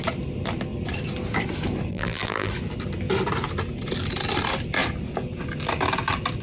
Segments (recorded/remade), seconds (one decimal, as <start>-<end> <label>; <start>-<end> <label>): 0.0-1.9 recorded; 1.9-2.5 remade; 2.5-6.4 recorded